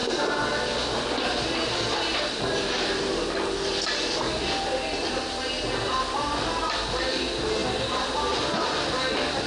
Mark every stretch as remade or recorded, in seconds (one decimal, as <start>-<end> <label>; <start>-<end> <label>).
0.0-9.5 recorded